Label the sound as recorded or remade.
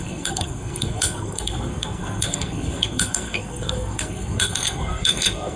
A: remade